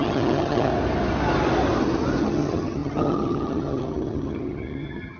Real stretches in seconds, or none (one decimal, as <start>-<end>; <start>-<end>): 0.7-2.2

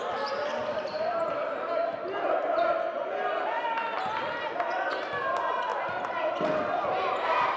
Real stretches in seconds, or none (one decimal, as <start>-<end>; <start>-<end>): 0.0-0.6; 1.7-7.6

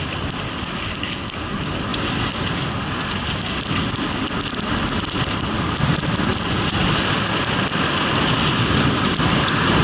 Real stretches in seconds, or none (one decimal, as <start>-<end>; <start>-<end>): 0.0-6.3

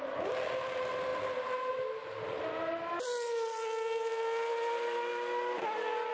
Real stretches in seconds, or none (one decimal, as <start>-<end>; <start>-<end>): 0.0-6.1

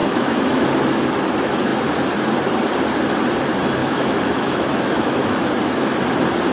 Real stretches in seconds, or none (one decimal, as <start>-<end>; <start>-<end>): 0.7-3.8; 5.4-6.5

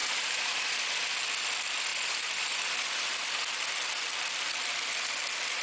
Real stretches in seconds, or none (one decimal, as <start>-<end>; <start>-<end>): 0.9-1.9; 4.1-5.6

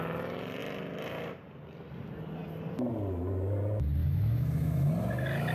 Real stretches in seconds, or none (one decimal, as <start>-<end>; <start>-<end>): 0.0-4.0; 4.9-5.5

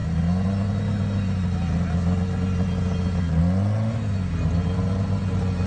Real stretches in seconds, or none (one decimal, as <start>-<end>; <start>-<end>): 0.0-5.7